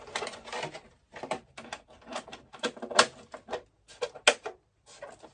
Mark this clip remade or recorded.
recorded